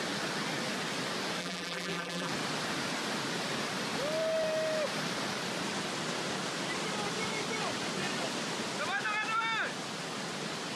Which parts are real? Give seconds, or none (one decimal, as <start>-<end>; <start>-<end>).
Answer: 0.0-1.4; 2.3-10.8